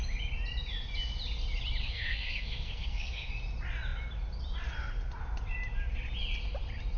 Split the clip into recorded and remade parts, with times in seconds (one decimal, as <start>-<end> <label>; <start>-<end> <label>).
0.0-1.8 recorded; 1.8-3.3 remade; 3.3-7.0 recorded